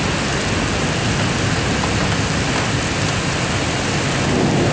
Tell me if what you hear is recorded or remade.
recorded